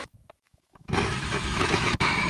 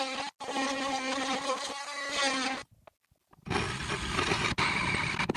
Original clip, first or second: second